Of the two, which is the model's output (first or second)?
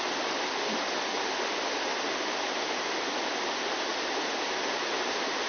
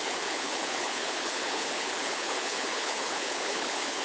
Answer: second